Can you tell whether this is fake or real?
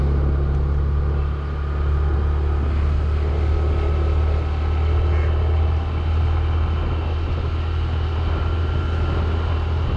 real